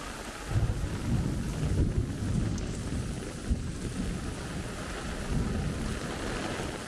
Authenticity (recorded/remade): recorded